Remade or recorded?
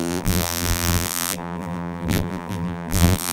remade